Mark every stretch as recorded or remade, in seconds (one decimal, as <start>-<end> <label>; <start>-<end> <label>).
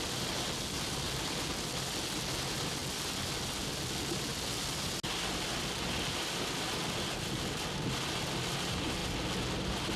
0.0-10.0 recorded